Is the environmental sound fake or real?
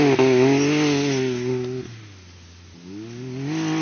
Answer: real